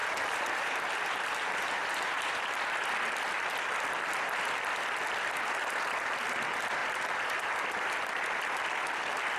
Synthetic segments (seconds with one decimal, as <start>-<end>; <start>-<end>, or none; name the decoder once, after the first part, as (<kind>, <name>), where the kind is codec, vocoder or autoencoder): 0.0-2.2 (vocoder, BigVGAN v2); 6.8-7.5